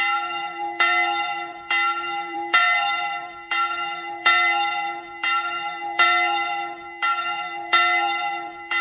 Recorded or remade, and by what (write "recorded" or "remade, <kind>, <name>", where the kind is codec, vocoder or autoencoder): remade, vocoder, BigVGAN v2